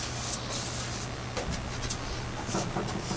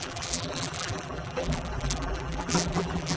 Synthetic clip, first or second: second